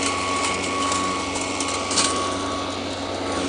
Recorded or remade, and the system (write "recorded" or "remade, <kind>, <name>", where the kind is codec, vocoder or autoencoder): recorded